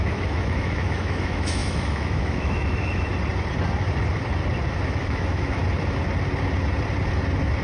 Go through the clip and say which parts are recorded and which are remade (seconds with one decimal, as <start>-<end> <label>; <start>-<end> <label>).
0.0-3.1 remade; 3.1-5.0 recorded; 5.0-5.6 remade; 5.6-7.6 recorded